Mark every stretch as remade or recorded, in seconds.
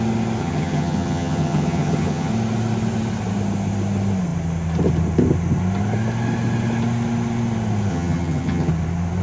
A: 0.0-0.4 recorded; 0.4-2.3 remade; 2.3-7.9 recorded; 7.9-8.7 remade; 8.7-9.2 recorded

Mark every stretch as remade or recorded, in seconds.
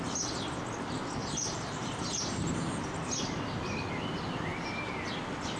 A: 0.0-1.2 recorded; 1.2-3.5 remade; 3.5-5.6 recorded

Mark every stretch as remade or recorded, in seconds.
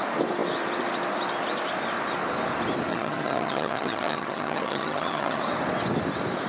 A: 0.0-2.9 recorded; 2.9-5.4 remade; 5.4-6.5 recorded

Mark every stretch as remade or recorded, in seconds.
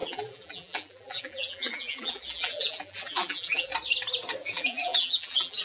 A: 0.0-3.7 remade; 3.7-4.4 recorded; 4.4-5.6 remade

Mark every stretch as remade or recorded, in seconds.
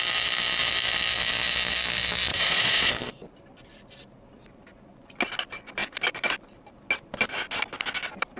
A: 0.0-2.3 recorded; 2.3-2.9 remade; 2.9-8.4 recorded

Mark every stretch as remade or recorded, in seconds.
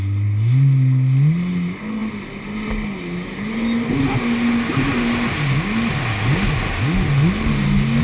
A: 0.0-4.7 recorded; 4.7-5.3 remade; 5.3-8.0 recorded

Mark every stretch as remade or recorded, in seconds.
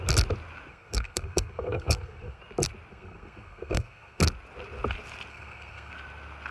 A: 0.0-0.7 recorded; 0.7-2.4 remade; 2.4-2.9 recorded; 2.9-4.2 remade; 4.2-5.3 recorded; 5.3-5.9 remade; 5.9-6.5 recorded